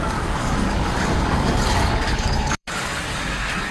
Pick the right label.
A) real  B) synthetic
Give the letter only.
B